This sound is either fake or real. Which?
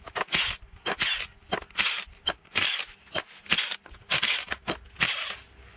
real